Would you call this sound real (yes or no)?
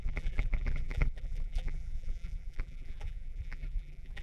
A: no